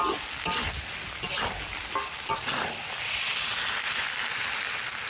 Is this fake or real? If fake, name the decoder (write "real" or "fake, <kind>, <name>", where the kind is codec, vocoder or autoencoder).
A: real